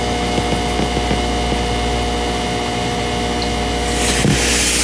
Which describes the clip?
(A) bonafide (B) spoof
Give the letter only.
A